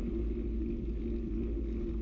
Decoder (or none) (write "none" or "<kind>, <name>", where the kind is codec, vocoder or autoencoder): none